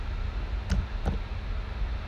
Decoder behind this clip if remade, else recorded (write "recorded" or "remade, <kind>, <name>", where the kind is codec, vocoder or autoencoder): recorded